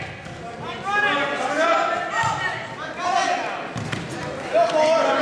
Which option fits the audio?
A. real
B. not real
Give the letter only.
A